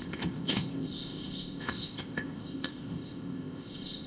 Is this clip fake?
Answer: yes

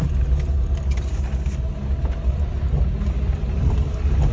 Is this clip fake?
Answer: no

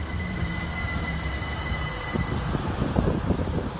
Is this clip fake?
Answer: yes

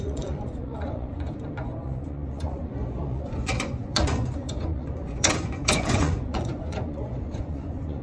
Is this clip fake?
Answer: yes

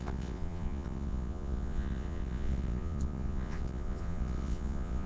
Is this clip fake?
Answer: yes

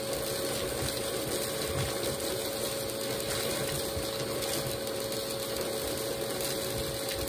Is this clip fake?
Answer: no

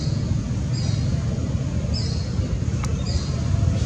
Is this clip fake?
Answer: no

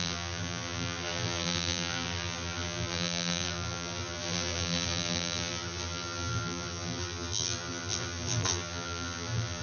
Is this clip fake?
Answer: yes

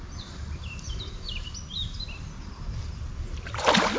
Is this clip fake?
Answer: no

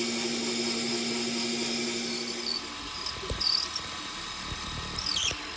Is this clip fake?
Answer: no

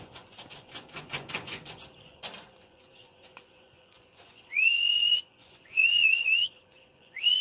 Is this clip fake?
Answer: yes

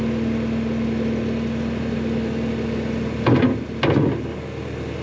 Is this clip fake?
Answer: no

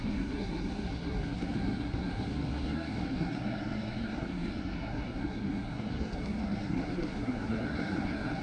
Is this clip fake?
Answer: yes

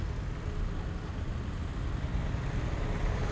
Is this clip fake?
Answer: no